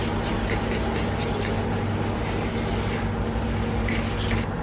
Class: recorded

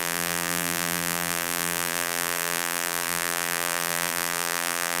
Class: remade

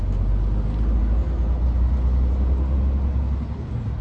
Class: recorded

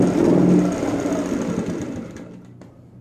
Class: recorded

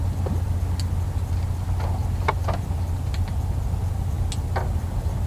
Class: recorded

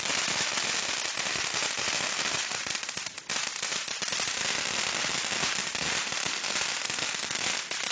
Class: remade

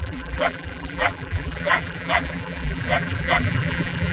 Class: remade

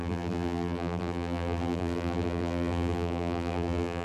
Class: remade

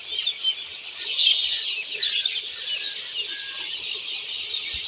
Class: recorded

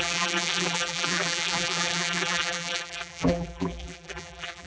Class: remade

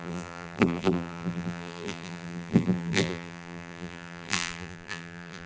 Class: remade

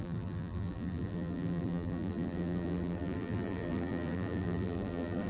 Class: remade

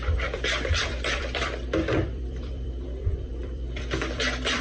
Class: remade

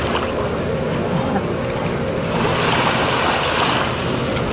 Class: recorded